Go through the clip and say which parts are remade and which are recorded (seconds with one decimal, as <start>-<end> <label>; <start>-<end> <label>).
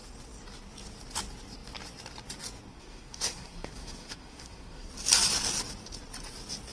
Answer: 0.0-2.7 recorded; 2.7-4.9 remade; 4.9-6.7 recorded